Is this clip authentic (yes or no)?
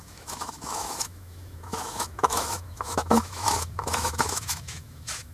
no